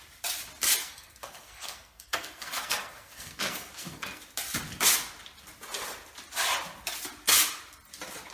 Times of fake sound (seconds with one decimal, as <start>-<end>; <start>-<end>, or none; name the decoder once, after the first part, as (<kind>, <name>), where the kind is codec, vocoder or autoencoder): 0.8-4.2 (codec, SNAC)